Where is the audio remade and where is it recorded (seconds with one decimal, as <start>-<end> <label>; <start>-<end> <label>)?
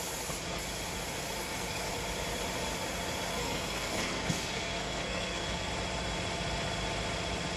0.0-1.4 recorded; 1.4-1.9 remade; 1.9-3.3 recorded; 3.3-5.7 remade; 5.7-7.6 recorded